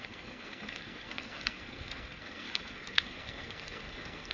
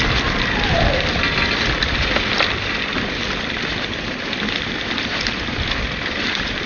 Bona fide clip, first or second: second